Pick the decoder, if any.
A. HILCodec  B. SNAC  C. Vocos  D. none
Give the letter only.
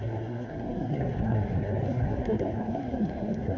B